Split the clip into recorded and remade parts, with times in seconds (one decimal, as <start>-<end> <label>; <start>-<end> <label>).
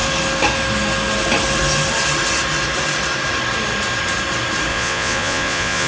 0.0-4.7 recorded; 4.7-5.9 remade